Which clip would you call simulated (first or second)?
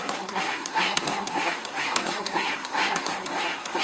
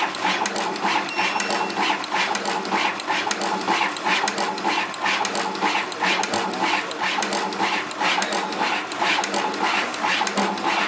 first